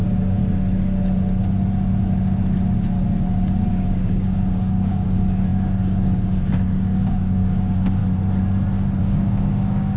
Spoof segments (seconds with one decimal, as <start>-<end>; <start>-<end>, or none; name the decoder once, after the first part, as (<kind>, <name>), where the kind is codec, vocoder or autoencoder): 0.0-0.4 (codec, DAC); 3.7-8.0; 9.0-10.0